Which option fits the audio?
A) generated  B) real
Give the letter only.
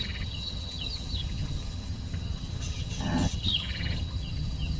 A